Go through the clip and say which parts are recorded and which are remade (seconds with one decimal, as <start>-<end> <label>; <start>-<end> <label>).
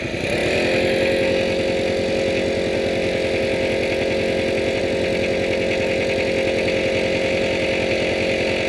0.0-8.7 recorded